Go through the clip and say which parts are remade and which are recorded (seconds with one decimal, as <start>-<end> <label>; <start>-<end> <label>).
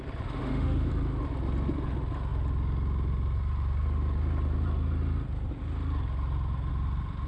0.0-0.4 recorded; 0.4-0.9 remade; 0.9-7.3 recorded